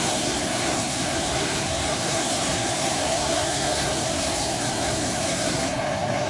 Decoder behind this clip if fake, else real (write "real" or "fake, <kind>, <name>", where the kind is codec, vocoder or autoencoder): fake, codec, SNAC